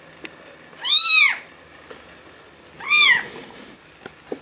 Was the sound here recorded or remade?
recorded